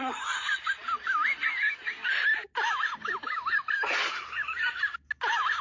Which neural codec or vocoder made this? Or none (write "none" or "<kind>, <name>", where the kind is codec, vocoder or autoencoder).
none